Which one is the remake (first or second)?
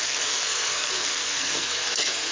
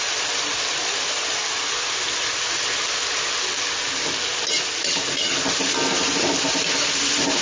first